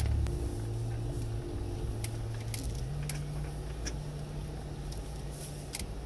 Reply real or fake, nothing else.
real